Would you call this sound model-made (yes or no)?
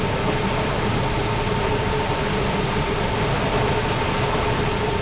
no